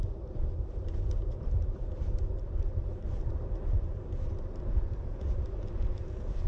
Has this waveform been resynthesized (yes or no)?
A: yes